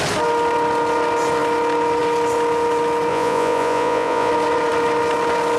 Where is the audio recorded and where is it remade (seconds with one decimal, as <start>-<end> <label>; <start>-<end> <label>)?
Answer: 0.0-3.1 recorded; 3.1-4.3 remade; 4.3-5.6 recorded